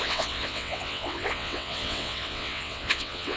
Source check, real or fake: fake